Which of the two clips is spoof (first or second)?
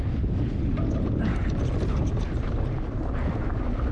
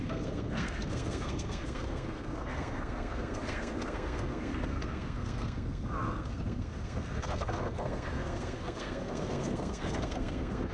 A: second